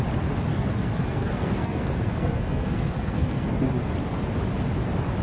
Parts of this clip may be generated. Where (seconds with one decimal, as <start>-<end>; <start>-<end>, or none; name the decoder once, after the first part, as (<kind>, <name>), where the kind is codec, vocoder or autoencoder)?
0.5-3.6 (codec, SNAC)